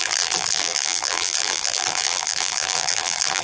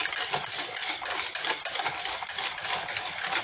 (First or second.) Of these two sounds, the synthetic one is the first